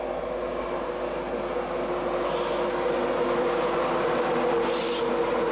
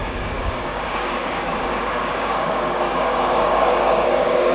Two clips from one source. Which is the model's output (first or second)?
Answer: second